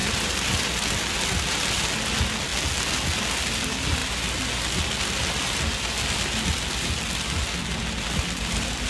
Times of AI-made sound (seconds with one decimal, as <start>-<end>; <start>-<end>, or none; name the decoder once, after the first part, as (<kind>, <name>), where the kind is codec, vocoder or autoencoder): 0.0-1.1 (vocoder, BigVGAN v2)